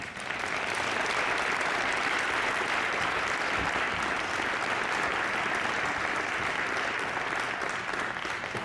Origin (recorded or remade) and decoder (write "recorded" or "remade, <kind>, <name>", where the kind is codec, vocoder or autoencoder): recorded